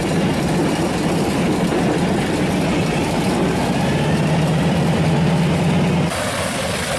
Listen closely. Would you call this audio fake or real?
real